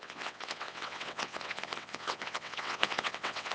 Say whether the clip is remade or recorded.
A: remade